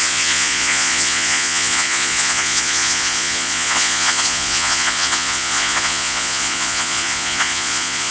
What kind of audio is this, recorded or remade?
remade